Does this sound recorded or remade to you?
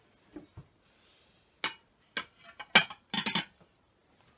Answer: recorded